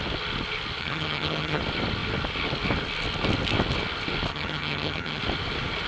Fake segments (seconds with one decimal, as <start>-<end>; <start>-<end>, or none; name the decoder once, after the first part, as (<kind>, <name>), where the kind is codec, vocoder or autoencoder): 0.8-1.6 (vocoder, HiFi-GAN); 4.3-5.2

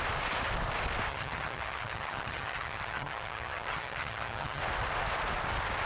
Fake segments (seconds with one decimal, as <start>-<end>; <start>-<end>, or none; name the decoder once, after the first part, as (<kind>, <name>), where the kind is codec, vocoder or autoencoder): 1.1-4.6 (vocoder, HiFi-GAN)

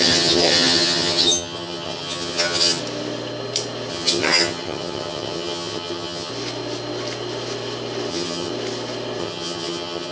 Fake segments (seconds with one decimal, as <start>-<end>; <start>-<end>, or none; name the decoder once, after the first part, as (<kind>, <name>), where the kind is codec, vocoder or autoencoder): 0.0-2.8 (vocoder, HiFi-GAN); 3.9-6.3; 8.1-8.5; 9.2-10.1